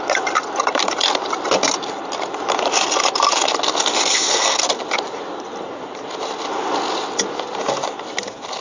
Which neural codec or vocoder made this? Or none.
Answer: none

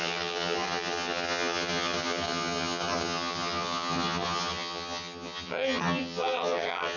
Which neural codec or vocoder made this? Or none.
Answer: vocoder, HiFi-GAN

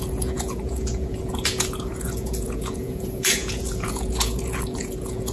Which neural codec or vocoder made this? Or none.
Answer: vocoder, Vocos